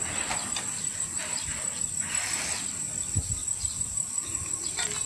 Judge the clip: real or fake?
real